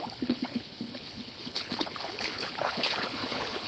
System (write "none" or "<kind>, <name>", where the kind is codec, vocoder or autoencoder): codec, HILCodec